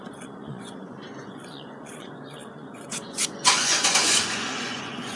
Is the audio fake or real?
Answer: fake